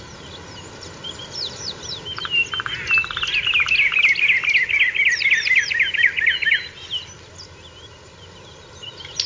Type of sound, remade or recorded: recorded